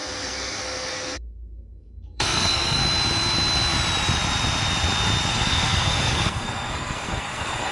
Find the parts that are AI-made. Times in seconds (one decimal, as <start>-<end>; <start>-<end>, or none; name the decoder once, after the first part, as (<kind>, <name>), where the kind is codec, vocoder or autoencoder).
0.0-2.8 (codec, SNAC); 5.3-7.7